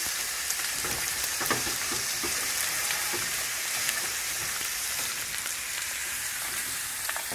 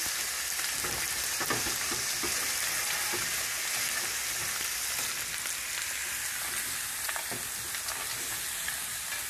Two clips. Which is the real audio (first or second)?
second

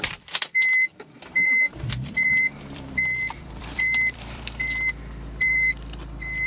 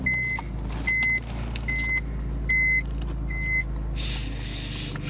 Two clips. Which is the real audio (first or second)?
second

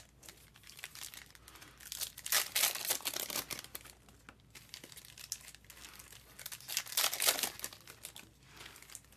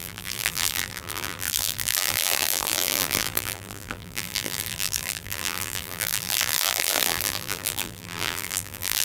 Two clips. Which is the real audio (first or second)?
first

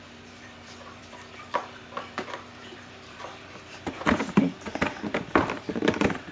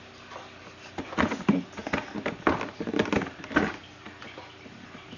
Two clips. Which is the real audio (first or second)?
second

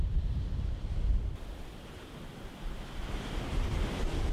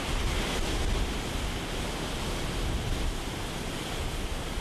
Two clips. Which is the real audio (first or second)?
second